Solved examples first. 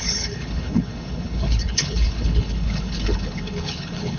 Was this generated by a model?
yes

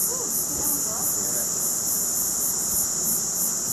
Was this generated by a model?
yes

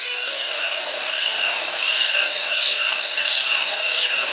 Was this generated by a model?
yes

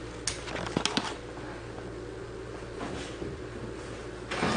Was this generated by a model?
no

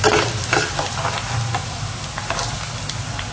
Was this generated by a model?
no